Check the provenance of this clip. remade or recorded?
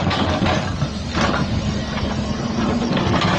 recorded